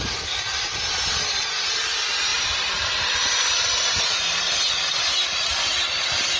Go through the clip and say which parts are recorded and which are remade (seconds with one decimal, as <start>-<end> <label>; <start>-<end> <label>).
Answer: 0.0-6.4 recorded